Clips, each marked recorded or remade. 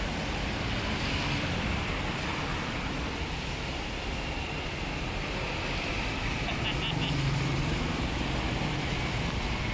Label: recorded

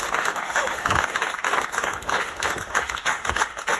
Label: remade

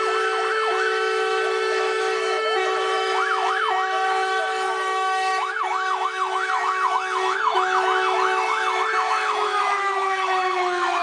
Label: remade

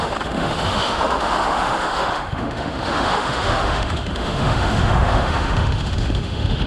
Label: remade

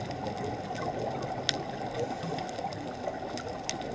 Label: recorded